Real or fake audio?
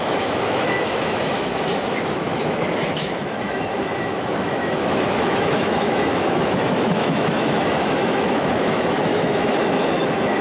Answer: fake